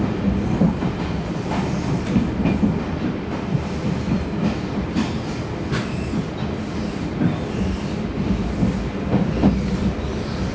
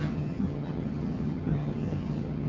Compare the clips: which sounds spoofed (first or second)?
second